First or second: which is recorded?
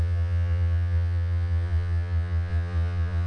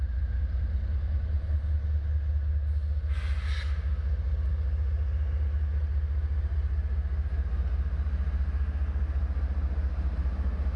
second